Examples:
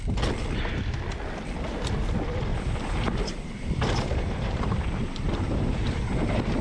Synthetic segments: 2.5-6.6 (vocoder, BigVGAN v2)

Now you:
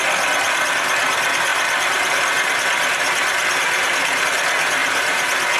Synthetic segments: 1.5-4.2 (vocoder, BigVGAN v2); 4.8-5.6

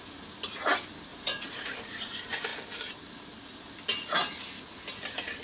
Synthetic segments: 1.1-2.1 (vocoder, Vocos)

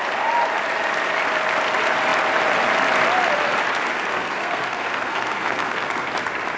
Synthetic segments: 4.1-6.1 (codec, SNAC)

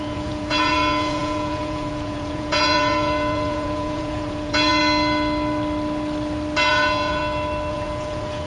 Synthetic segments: 0.0-4.8 (vocoder, Vocos); 6.7-7.2; 7.7-8.5